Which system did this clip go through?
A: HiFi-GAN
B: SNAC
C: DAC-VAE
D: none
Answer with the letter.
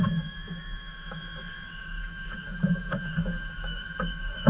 C